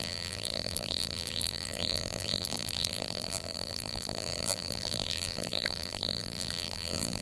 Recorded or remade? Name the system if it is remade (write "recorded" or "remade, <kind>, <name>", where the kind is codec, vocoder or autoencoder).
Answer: remade, vocoder, BigVGAN v2